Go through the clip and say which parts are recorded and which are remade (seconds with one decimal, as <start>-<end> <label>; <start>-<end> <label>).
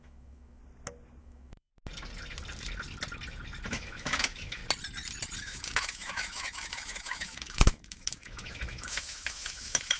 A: 0.0-0.6 remade; 0.6-1.2 recorded; 1.2-1.7 remade; 1.7-3.7 recorded; 3.7-4.6 remade; 4.6-5.4 recorded; 5.4-10.0 remade